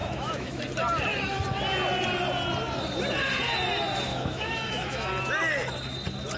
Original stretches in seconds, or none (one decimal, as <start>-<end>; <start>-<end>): 0.6-4.1; 5.1-6.4